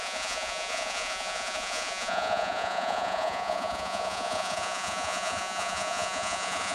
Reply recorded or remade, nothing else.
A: remade